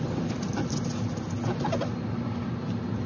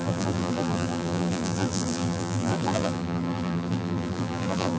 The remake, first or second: second